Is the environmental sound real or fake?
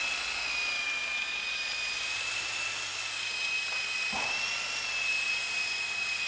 real